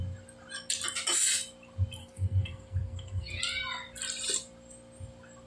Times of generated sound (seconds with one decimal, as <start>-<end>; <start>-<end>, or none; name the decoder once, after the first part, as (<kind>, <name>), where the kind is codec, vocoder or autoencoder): 2.0-3.4 (codec, SNAC)